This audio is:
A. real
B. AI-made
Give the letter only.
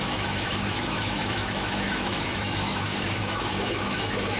B